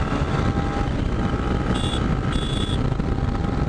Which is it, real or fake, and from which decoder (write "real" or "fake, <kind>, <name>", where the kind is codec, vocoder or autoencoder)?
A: real